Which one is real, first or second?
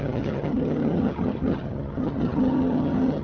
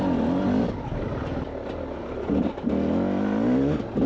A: second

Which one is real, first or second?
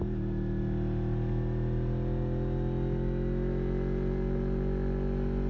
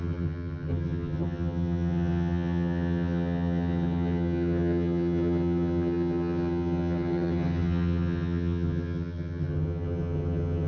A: first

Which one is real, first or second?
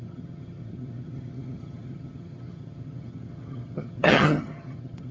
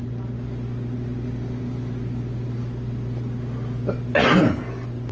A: second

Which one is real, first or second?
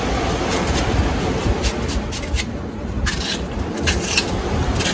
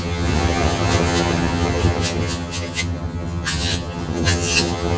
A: first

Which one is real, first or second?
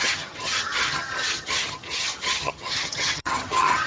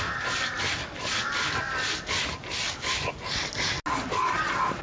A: second